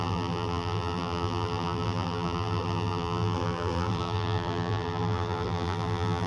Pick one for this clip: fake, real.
fake